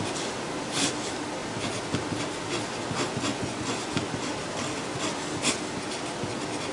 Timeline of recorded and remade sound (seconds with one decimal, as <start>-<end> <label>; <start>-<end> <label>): 0.0-3.3 recorded; 3.3-3.9 remade; 3.9-6.7 recorded